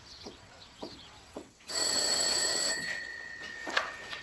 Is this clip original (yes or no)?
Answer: no